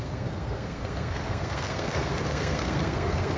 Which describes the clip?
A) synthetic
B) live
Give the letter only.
A